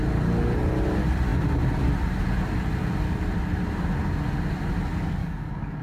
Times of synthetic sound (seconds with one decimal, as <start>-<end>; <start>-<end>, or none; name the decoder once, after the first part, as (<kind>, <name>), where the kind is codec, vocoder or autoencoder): 5.2-5.8 (codec, DAC)